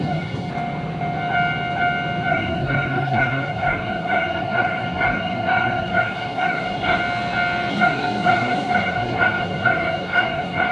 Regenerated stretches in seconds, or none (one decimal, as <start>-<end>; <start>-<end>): 0.0-0.5; 2.3-7.0; 7.7-10.7